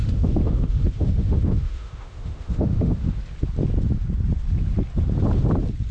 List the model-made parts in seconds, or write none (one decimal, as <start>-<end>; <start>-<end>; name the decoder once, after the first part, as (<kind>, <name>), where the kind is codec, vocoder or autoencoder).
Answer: 0.0-3.2 (autoencoder, DAC-VAE)